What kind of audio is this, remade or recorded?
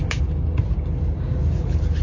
remade